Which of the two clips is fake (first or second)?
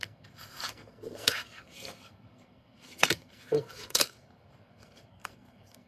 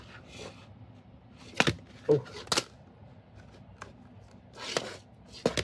first